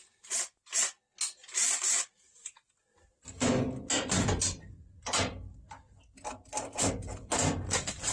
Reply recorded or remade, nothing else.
recorded